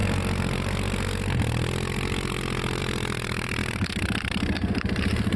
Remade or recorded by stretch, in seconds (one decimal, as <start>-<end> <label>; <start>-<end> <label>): 0.0-2.8 recorded; 2.8-5.4 remade